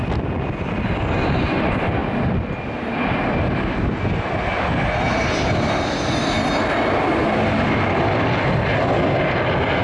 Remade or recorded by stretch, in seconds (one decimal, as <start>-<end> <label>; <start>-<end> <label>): 0.0-9.8 recorded